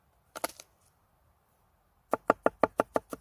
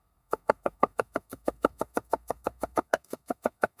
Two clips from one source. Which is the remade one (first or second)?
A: second